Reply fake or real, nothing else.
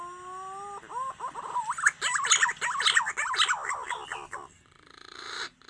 real